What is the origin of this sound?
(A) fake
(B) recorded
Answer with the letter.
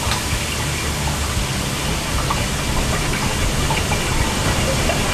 B